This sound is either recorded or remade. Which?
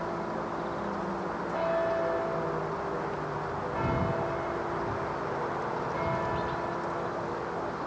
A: recorded